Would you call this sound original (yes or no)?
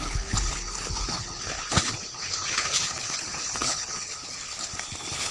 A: no